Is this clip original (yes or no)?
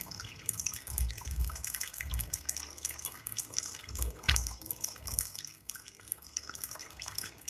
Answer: no